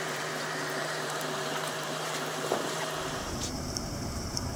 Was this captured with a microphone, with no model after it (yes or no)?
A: no